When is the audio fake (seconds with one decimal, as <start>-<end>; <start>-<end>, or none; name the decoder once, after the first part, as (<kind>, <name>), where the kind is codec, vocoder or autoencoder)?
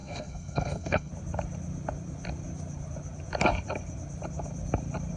0.0-1.1 (codec, SNAC)